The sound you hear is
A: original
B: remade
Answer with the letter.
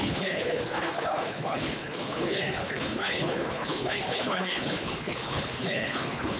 B